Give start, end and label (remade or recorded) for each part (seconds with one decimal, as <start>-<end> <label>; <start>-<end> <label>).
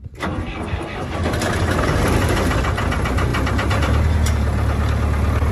0.0-0.4 recorded; 0.4-1.1 remade; 1.1-5.5 recorded